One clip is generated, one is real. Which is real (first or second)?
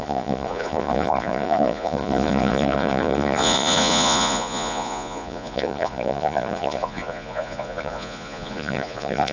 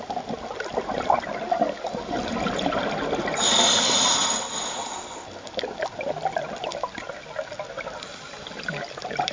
second